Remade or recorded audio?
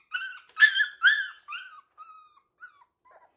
recorded